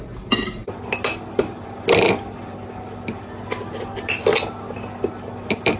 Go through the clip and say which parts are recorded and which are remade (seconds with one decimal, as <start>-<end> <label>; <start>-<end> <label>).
0.0-5.8 recorded